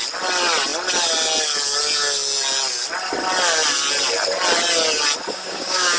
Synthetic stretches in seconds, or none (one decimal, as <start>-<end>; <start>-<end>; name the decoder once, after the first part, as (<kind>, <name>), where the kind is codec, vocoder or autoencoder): 5.3-6.0 (codec, DAC)